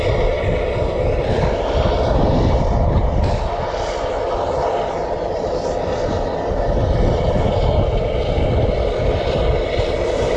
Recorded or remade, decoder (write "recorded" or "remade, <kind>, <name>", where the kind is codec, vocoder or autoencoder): recorded